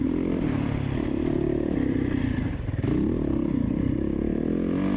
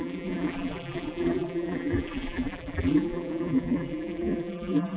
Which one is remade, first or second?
second